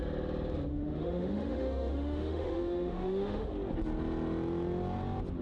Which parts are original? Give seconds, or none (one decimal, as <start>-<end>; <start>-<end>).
0.0-0.7; 3.5-5.4